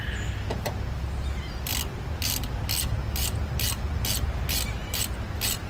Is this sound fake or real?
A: real